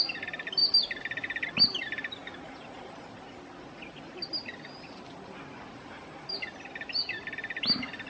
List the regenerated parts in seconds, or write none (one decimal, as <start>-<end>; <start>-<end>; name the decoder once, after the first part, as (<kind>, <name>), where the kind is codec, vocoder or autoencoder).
none